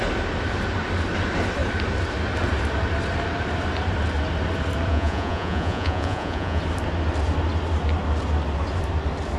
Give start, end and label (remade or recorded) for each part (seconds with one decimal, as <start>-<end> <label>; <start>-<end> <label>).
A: 0.0-4.9 recorded; 4.9-6.6 remade; 6.6-9.4 recorded

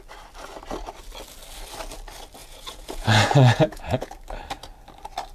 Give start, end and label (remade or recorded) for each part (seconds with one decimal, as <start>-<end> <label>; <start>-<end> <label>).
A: 0.0-2.4 recorded; 2.4-4.1 remade; 4.1-5.3 recorded

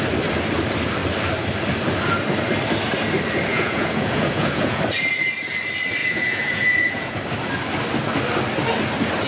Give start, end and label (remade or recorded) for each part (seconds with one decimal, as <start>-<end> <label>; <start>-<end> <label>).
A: 0.0-3.5 recorded; 3.5-4.8 remade; 4.8-6.0 recorded; 6.0-7.2 remade; 7.2-9.3 recorded

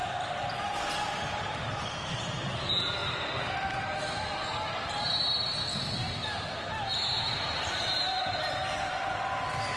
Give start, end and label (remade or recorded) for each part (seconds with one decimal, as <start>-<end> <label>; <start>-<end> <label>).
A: 0.0-9.8 recorded